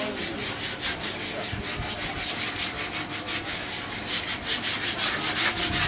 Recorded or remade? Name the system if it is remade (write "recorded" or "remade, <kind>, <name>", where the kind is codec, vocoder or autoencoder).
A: recorded